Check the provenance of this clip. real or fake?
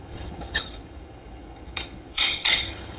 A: fake